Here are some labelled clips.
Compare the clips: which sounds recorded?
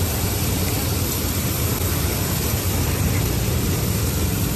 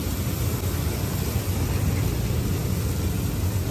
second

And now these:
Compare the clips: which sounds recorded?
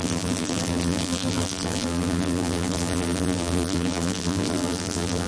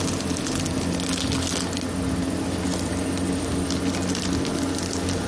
second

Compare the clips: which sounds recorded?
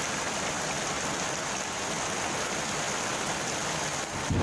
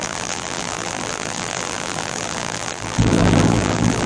first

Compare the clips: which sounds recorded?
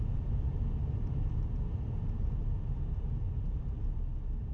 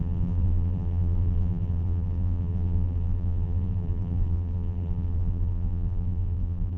first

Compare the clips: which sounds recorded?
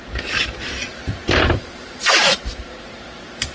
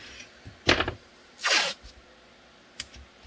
second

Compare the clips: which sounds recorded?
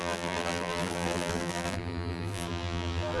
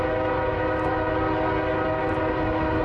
second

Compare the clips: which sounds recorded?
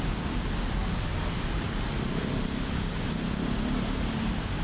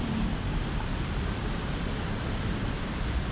first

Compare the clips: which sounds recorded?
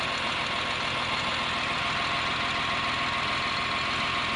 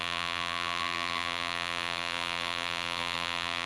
first